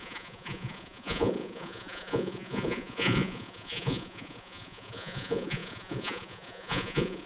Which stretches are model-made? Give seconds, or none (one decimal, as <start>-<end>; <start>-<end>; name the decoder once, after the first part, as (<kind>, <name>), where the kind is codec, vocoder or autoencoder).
0.0-7.3 (vocoder, Vocos)